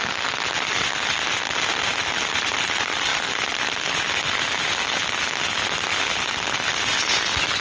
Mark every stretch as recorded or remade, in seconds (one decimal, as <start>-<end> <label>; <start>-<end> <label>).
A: 0.0-7.6 recorded